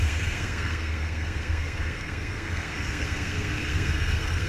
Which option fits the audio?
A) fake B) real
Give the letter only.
A